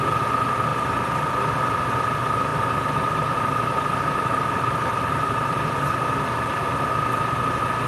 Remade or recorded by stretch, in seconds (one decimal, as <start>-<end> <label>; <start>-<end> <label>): 0.0-0.7 recorded; 0.7-1.3 remade; 1.3-2.5 recorded; 2.5-6.0 remade; 6.0-7.9 recorded